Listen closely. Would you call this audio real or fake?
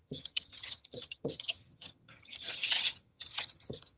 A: fake